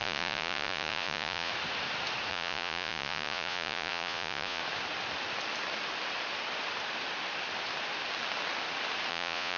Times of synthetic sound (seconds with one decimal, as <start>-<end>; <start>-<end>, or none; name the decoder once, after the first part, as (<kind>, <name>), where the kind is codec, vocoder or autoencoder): 0.0-1.5 (vocoder, Vocos); 2.3-4.6; 9.1-9.6